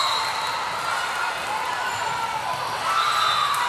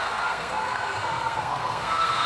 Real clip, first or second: first